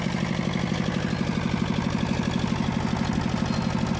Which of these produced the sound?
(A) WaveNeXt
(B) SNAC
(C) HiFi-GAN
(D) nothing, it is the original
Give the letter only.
D